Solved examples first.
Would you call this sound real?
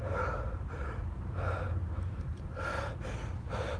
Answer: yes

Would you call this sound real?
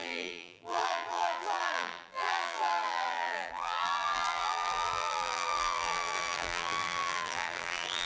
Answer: no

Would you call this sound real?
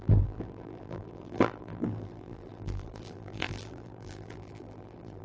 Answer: no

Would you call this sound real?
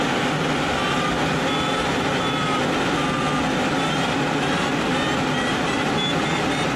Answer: yes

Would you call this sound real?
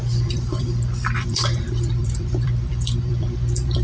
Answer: no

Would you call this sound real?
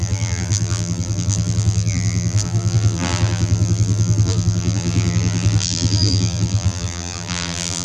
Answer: no